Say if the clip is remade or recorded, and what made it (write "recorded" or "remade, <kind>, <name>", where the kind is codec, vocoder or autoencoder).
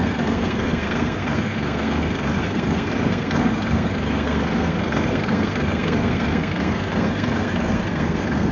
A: remade, codec, SNAC